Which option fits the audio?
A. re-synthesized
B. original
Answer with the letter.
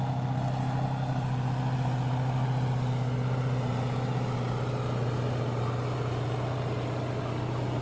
B